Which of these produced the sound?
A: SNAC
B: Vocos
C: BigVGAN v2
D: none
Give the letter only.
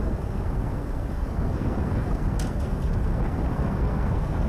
A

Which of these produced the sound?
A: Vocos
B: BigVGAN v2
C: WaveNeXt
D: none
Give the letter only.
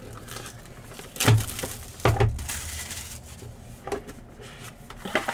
D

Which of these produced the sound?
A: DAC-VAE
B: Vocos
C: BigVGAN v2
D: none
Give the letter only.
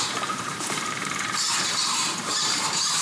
C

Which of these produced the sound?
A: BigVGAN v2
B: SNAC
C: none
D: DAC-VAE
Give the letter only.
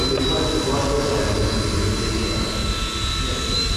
C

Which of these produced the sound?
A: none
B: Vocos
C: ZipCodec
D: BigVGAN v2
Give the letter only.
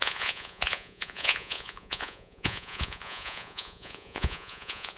B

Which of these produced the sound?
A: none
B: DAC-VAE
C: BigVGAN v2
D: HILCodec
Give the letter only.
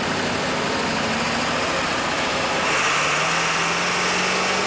A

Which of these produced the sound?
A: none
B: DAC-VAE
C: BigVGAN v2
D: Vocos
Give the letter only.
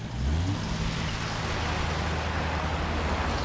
A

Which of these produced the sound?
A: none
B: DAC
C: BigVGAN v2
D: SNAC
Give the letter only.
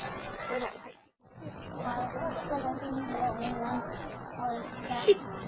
C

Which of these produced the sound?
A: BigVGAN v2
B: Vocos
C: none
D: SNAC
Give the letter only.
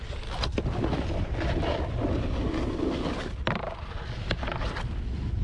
C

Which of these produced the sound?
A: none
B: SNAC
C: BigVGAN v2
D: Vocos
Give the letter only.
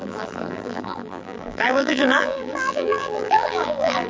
C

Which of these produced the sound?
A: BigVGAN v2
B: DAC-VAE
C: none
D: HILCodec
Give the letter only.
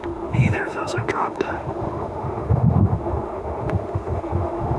B